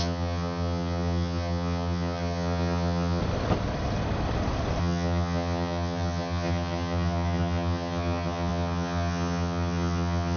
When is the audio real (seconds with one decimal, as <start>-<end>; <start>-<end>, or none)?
3.2-4.8